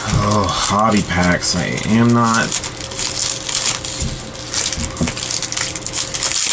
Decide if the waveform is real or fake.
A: real